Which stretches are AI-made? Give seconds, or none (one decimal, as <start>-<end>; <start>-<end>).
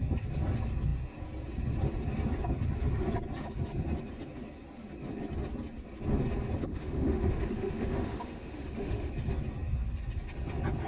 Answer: 6.7-9.1